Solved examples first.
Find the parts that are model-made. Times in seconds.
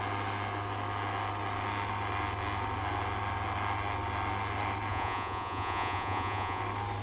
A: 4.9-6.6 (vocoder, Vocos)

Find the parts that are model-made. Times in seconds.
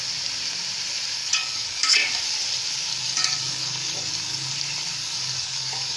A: 1.2-2.1 (codec, DAC); 2.9-4.5; 5.0-6.0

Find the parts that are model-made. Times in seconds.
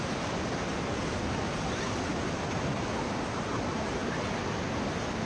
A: none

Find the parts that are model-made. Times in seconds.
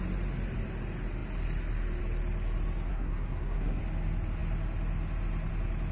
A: 2.9-3.8 (codec, SNAC)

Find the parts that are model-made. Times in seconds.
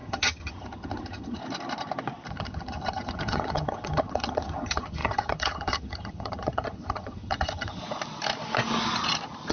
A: 0.0-1.4 (vocoder, HiFi-GAN); 2.3-7.8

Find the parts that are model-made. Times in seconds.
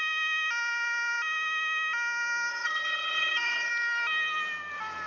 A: 2.5-3.7 (vocoder, HiFi-GAN)